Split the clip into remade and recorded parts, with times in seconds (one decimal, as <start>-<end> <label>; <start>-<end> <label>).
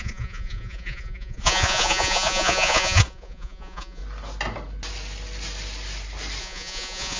0.0-4.0 remade; 4.0-6.4 recorded; 6.4-7.2 remade